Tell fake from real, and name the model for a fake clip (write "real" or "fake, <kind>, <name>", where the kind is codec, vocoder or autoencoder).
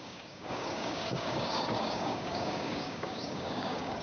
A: fake, codec, DAC